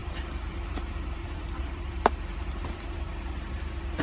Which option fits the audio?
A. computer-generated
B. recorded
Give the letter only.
A